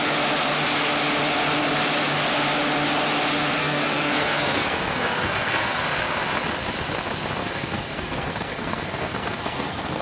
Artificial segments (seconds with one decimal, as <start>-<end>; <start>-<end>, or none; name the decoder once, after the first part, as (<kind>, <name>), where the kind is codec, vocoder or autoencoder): 3.6-5.8 (codec, SNAC); 7.4-10.0